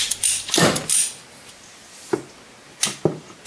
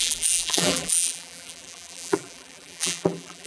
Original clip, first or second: first